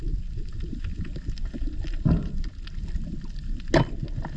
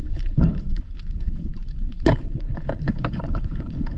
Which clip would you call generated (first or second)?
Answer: second